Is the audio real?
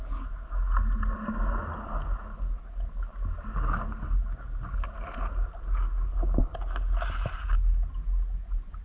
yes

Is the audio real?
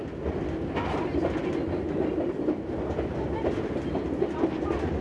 yes